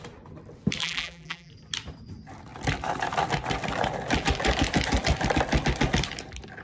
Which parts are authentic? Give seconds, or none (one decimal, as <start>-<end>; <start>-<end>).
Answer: 0.0-0.8; 1.5-6.6